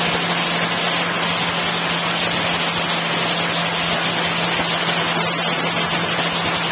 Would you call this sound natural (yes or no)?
yes